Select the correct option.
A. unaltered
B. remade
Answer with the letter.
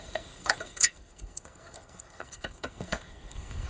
B